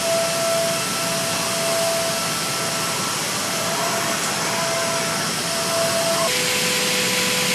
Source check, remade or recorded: recorded